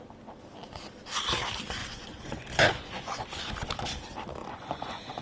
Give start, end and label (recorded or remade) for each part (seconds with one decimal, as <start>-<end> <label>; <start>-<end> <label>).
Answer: 0.0-1.8 recorded; 1.8-3.5 remade; 3.5-4.4 recorded; 4.4-5.2 remade

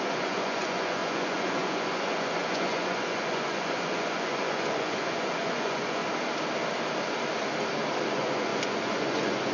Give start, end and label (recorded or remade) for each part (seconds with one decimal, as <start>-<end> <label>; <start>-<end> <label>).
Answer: 0.0-6.0 remade; 6.0-8.1 recorded; 8.1-9.5 remade

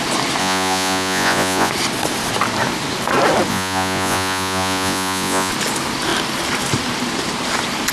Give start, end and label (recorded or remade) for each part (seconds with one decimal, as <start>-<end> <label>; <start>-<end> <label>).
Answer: 0.0-0.4 recorded; 0.4-1.7 remade; 1.7-3.5 recorded; 3.5-5.5 remade; 5.5-7.9 recorded

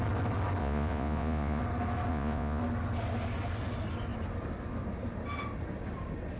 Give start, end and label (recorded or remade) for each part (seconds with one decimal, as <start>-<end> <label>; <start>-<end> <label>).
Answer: 0.0-0.6 recorded; 0.6-1.6 remade; 1.6-2.1 recorded; 2.1-2.6 remade; 2.6-6.4 recorded

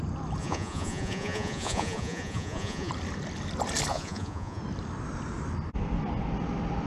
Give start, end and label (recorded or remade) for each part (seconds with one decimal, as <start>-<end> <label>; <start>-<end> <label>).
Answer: 0.0-0.4 recorded; 0.4-2.9 remade; 2.9-3.9 recorded; 3.9-4.6 remade; 4.6-6.9 recorded

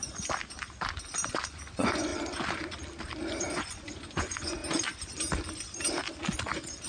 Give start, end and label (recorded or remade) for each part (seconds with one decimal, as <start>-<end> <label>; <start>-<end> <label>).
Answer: 0.0-1.5 recorded; 1.5-2.1 remade; 2.1-3.4 recorded; 3.4-4.6 remade; 4.6-6.9 recorded